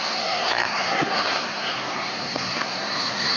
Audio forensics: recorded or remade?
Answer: remade